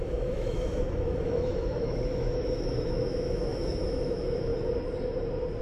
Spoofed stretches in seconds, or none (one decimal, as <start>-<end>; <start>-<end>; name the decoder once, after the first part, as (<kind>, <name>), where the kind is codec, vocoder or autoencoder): 0.0-4.5 (autoencoder, DAC-VAE)